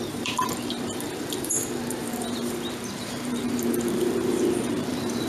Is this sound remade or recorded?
remade